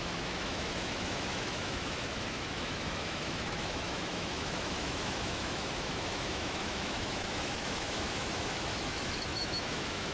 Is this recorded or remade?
remade